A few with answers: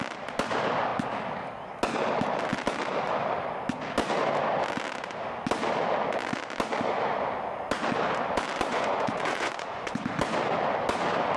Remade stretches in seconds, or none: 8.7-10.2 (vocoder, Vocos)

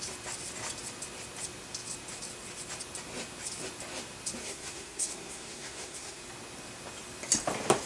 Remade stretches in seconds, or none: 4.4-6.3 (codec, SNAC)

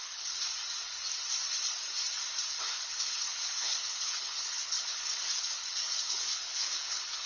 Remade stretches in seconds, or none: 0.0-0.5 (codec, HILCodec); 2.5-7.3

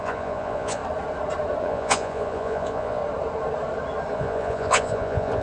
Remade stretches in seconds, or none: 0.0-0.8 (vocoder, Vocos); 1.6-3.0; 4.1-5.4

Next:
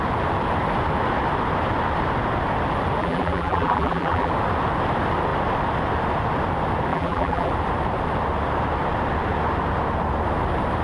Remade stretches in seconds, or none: 3.0-4.3 (vocoder, BigVGAN v2); 6.9-7.5

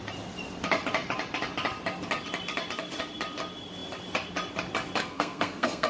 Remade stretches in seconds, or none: 5.0-5.9 (codec, SNAC)